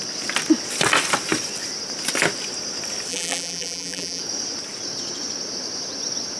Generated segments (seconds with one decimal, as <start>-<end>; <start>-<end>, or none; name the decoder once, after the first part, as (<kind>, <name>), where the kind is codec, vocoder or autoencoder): 3.1-4.2 (vocoder, BigVGAN v2)